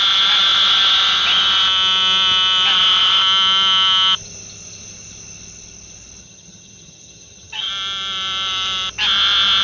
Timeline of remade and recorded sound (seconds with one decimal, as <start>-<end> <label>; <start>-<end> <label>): 0.0-6.2 recorded; 6.2-7.7 remade; 7.7-9.6 recorded